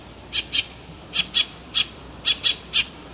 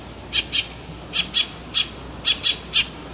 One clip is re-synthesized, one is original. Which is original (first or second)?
second